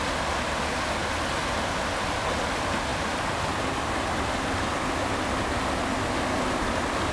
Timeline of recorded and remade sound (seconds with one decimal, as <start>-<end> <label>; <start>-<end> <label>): 0.0-2.9 recorded; 2.9-3.5 remade; 3.5-7.1 recorded